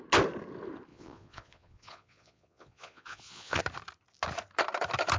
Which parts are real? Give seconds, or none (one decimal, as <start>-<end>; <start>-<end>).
0.0-0.9; 3.6-5.2